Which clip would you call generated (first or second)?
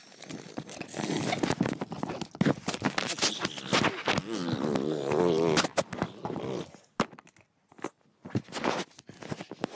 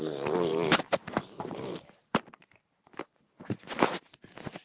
second